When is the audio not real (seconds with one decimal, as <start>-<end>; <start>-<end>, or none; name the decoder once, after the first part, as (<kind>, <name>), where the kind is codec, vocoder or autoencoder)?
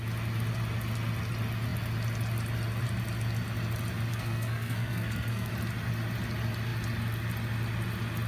4.1-5.5 (codec, SNAC)